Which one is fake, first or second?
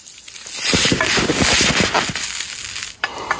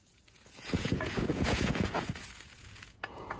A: second